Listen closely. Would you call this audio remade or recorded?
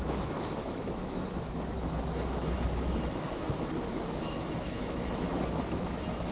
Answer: remade